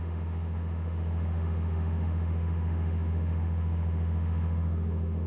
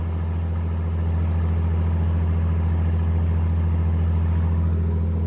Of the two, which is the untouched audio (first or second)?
second